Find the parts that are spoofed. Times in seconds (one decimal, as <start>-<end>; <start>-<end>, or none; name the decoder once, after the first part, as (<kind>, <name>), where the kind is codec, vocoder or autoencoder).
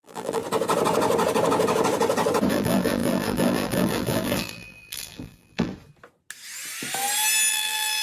0.0-0.4 (vocoder, BigVGAN v2); 2.5-5.7; 7.5-8.0